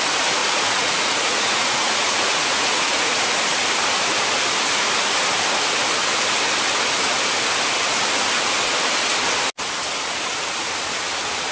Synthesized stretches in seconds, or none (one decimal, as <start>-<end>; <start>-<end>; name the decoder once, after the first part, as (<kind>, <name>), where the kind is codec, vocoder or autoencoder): 0.4-3.3 (vocoder, Vocos)